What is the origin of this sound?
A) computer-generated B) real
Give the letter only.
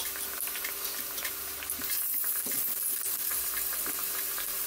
A